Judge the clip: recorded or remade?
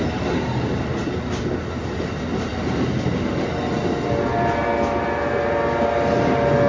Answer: recorded